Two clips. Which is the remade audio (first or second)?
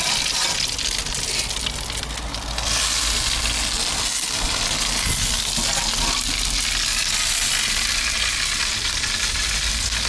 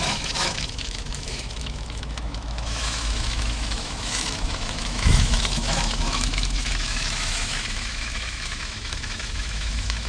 second